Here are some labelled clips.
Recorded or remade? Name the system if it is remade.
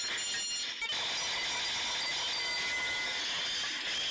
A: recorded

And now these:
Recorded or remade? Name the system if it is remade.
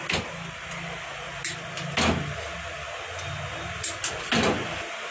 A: recorded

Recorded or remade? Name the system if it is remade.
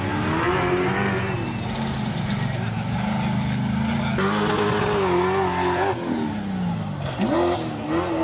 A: recorded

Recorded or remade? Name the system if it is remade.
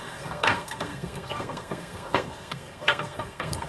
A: remade, codec, SNAC